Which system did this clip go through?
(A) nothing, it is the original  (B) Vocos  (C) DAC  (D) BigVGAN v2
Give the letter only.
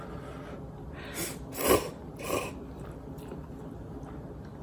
D